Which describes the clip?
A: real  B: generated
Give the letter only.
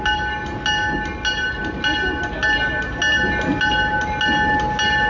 A